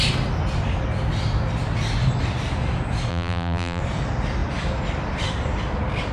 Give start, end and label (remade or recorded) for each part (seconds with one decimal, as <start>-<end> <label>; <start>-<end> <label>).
0.0-3.1 recorded; 3.1-3.8 remade; 3.8-6.1 recorded